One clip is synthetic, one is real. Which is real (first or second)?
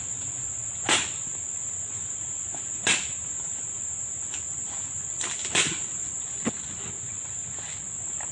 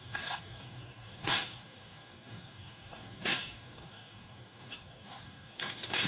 first